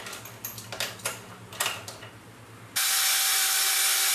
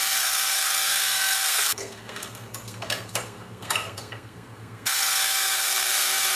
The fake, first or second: second